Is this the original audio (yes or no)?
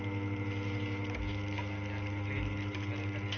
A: yes